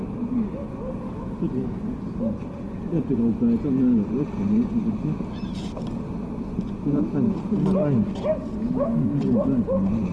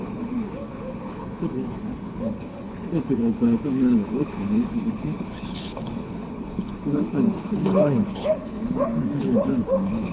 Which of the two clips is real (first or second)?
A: first